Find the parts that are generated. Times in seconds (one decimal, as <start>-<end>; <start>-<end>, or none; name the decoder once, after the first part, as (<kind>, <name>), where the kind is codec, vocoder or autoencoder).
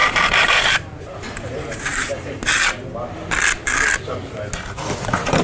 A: 0.0-2.4 (vocoder, BigVGAN v2); 5.0-5.4